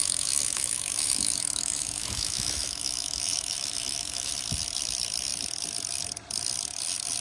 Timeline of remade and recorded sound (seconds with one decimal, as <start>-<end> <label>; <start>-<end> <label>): 0.0-4.3 remade; 4.3-7.2 recorded